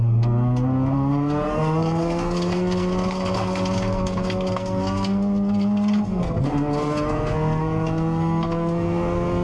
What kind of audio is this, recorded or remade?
remade